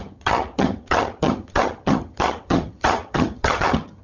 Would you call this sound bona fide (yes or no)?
no